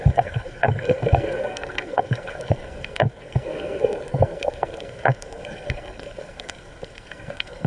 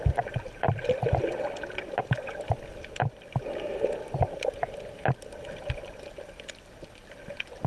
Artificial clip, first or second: first